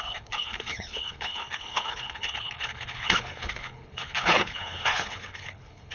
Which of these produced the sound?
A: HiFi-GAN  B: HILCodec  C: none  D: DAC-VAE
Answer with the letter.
B